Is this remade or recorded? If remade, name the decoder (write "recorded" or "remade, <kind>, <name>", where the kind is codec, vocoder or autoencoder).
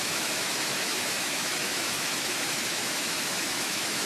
remade, autoencoder, DAC-VAE